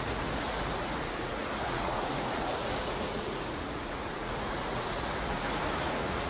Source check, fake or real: fake